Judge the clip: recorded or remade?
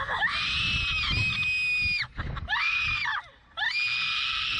recorded